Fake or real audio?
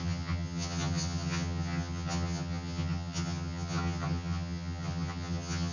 fake